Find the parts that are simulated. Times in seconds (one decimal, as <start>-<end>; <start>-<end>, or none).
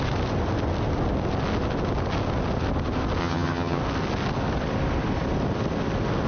3.2-3.8